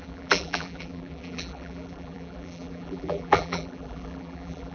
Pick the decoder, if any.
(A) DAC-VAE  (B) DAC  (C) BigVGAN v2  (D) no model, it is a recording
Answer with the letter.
C